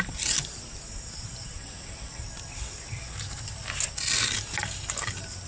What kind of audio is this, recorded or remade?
recorded